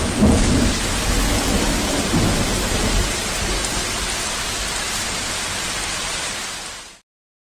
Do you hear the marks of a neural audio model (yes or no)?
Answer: no